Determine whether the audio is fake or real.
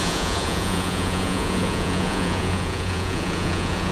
fake